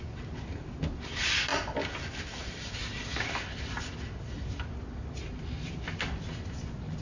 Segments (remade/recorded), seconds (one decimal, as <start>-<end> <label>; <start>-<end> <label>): 0.0-7.0 recorded